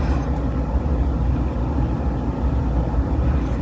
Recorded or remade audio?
recorded